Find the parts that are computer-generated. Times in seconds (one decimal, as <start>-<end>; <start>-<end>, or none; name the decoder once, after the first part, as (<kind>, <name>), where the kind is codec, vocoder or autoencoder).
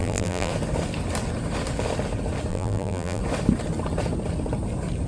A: 0.0-0.5 (vocoder, BigVGAN v2); 2.5-3.2